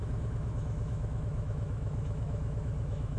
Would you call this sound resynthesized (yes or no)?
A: yes